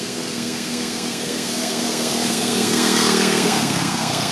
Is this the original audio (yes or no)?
no